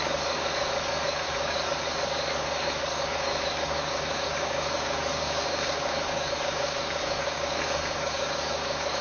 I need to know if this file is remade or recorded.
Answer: remade